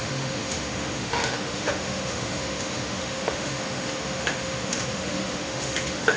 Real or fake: fake